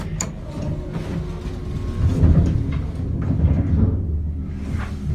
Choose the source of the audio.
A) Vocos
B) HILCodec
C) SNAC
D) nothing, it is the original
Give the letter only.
D